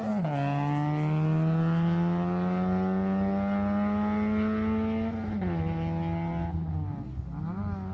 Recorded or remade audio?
recorded